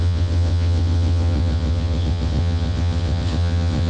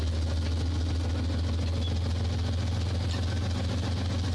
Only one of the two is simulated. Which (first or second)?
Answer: first